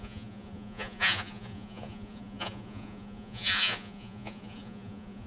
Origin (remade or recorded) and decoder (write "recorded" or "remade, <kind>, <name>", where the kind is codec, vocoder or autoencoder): remade, vocoder, Vocos